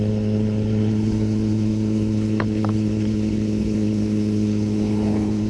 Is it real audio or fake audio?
fake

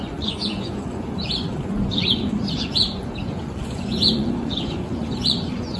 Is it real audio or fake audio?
fake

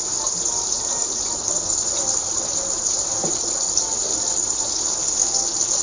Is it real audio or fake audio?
real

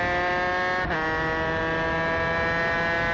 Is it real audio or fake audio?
real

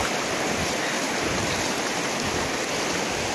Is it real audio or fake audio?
real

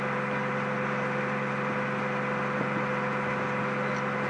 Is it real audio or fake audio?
real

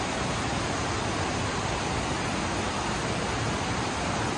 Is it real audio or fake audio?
real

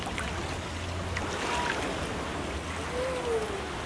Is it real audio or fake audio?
real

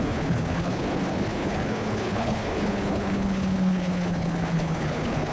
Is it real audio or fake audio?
fake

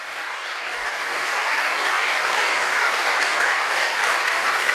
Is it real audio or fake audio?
fake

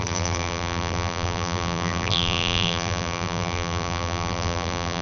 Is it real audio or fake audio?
fake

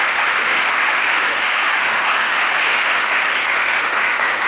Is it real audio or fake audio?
fake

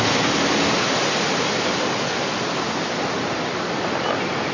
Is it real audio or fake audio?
real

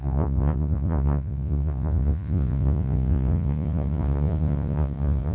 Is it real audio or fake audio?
fake